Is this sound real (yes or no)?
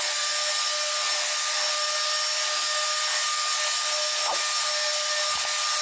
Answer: yes